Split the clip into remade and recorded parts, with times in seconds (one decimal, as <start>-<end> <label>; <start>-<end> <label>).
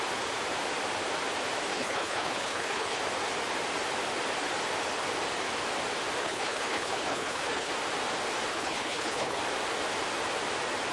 0.0-1.7 recorded; 1.7-3.0 remade; 3.0-6.2 recorded; 6.2-7.7 remade; 7.7-8.5 recorded; 8.5-9.4 remade; 9.4-10.9 recorded